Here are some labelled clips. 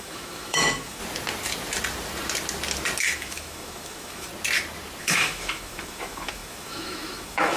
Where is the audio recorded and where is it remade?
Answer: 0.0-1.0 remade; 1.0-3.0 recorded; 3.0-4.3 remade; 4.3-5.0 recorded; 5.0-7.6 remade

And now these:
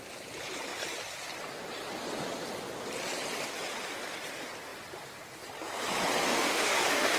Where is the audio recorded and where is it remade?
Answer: 0.0-6.3 recorded; 6.3-7.2 remade